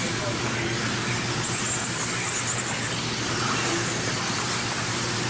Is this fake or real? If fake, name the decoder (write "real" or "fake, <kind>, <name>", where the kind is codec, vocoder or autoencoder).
real